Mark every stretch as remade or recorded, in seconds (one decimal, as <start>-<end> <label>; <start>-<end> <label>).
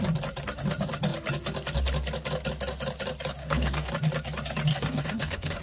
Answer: 0.0-3.4 recorded; 3.4-3.9 remade; 3.9-4.7 recorded; 4.7-5.6 remade